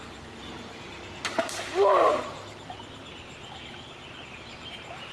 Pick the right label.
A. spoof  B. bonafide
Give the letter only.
B